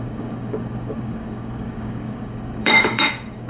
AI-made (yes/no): yes